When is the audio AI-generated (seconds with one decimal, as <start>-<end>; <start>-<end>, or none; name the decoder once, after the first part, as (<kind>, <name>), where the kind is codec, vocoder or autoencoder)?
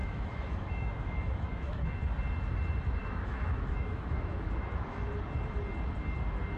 0.0-2.0 (autoencoder, DAC-VAE); 3.0-5.1